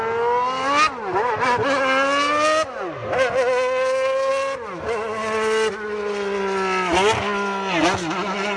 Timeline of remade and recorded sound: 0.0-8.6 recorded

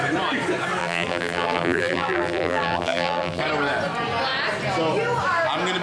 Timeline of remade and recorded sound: 0.0-0.8 recorded; 0.8-3.4 remade; 3.4-5.8 recorded

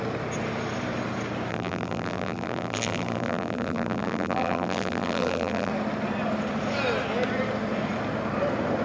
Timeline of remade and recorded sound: 0.0-1.5 recorded; 1.5-5.7 remade; 5.7-8.8 recorded

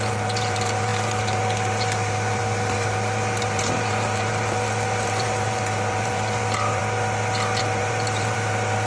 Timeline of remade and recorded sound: 0.0-6.8 remade; 6.8-7.6 recorded; 7.6-8.9 remade

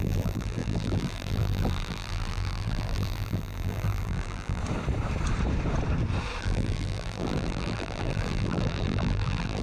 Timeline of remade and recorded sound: 0.0-4.6 remade; 4.6-6.4 recorded; 6.4-9.6 remade

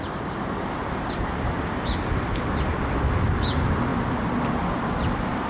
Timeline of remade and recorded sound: 0.0-5.5 recorded